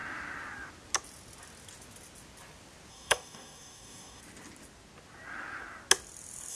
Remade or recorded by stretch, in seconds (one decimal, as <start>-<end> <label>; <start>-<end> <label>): 0.0-2.9 recorded; 2.9-4.2 remade; 4.2-6.5 recorded

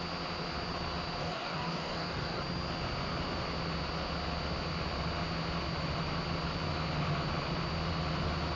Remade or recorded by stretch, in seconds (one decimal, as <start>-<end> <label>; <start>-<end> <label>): 0.0-1.2 recorded; 1.2-2.4 remade; 2.4-8.6 recorded

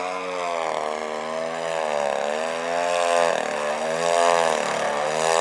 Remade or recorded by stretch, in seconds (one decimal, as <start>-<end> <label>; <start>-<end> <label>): 0.0-5.4 recorded